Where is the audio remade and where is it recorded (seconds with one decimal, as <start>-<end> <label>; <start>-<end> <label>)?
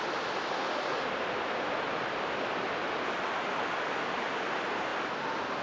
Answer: 0.0-5.6 recorded